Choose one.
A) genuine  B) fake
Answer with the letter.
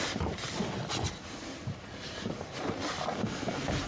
A